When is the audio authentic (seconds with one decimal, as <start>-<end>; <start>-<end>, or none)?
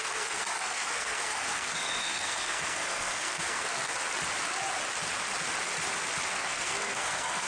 3.9-6.3